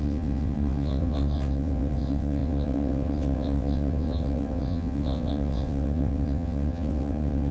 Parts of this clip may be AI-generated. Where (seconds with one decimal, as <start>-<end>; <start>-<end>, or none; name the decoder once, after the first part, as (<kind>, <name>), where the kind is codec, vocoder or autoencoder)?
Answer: 0.0-7.5 (vocoder, WaveNeXt)